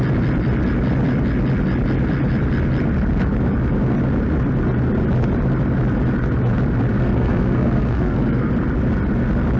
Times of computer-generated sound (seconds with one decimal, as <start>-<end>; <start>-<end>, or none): 7.0-8.5